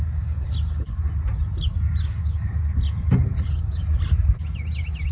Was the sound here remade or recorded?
recorded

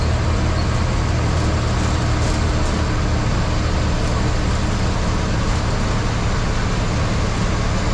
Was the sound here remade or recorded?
recorded